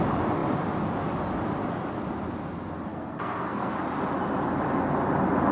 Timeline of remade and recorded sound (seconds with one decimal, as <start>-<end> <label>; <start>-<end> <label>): 0.0-2.9 recorded; 2.9-3.7 remade; 3.7-5.5 recorded